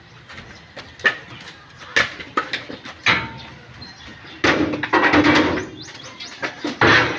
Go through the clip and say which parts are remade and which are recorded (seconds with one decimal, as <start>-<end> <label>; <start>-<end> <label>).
0.0-7.2 recorded